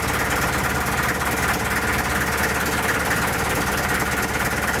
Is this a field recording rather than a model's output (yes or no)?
yes